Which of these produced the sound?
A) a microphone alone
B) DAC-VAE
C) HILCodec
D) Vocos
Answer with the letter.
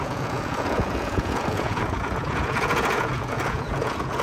D